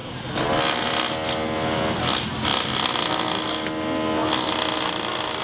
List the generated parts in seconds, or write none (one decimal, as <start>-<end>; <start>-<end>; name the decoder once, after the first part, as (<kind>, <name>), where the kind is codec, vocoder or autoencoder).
none